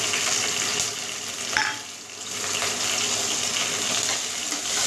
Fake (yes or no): no